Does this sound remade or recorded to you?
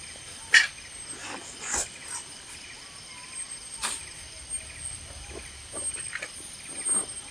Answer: recorded